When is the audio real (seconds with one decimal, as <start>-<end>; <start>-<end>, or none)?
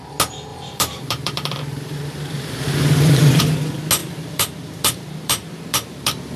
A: 0.0-0.5; 3.4-4.0